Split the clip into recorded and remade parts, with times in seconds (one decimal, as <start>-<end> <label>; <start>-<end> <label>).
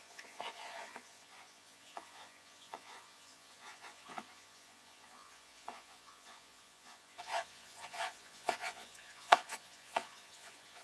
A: 0.0-10.8 remade